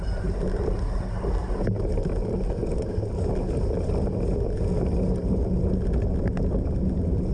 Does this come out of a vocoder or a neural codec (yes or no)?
no